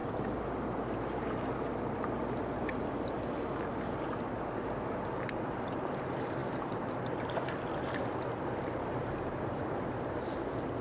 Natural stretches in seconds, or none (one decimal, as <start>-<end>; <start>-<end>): 0.0-10.8